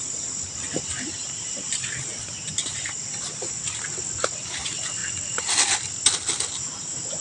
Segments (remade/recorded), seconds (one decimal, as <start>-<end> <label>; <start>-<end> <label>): 0.0-7.2 recorded